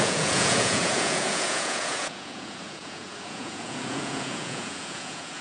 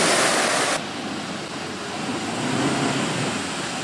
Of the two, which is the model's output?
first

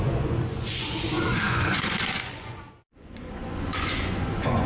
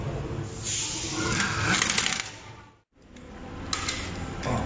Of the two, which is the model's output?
first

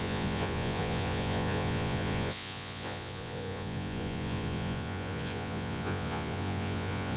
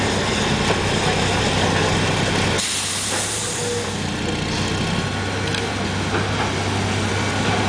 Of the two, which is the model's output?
first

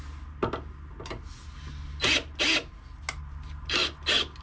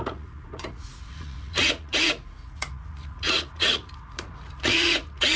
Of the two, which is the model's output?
second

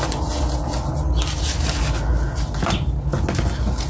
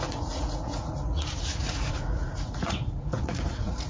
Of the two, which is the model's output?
second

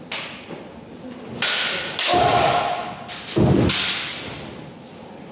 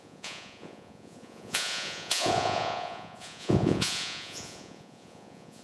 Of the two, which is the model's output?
second